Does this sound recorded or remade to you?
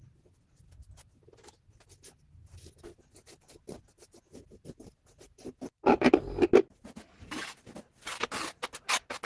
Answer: recorded